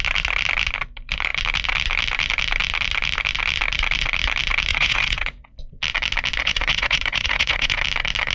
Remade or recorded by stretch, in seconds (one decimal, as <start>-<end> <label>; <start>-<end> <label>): 0.0-4.7 recorded; 4.7-5.6 remade; 5.6-6.4 recorded; 6.4-7.8 remade; 7.8-8.3 recorded